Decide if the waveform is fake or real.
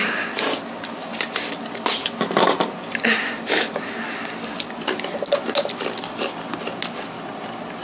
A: real